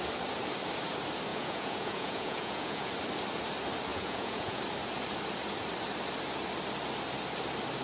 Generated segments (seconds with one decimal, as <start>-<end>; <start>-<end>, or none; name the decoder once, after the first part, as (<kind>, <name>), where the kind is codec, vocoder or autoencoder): 1.3-2.9 (vocoder, Vocos); 3.9-4.6